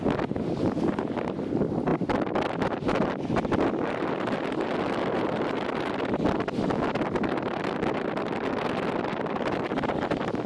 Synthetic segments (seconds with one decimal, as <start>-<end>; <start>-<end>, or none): none